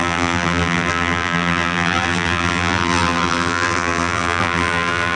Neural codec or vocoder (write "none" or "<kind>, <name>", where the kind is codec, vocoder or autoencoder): vocoder, BigVGAN v2